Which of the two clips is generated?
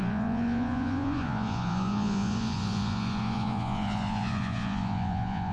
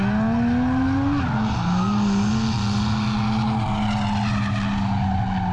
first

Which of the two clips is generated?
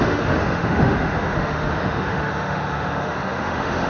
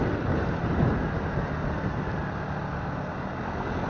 first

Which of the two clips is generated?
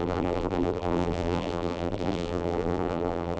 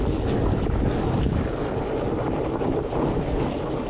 first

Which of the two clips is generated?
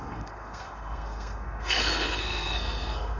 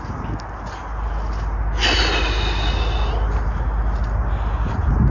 first